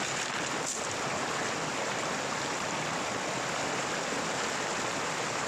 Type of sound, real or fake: real